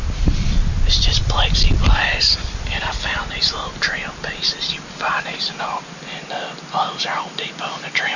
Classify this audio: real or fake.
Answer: real